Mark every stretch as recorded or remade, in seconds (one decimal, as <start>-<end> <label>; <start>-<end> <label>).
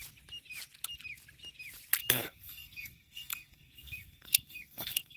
0.0-2.0 recorded; 2.0-5.2 remade